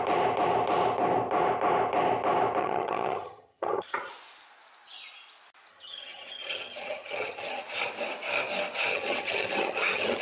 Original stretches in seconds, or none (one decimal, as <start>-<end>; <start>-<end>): 0.0-2.6; 4.1-5.7; 7.6-8.9